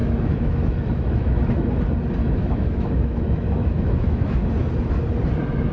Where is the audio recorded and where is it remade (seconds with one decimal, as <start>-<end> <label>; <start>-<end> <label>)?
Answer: 0.0-1.7 remade; 1.7-2.2 recorded; 2.2-4.5 remade; 4.5-5.7 recorded